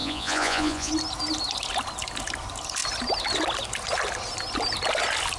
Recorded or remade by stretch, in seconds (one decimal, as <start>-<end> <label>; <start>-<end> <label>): 0.0-0.9 remade; 0.9-5.4 recorded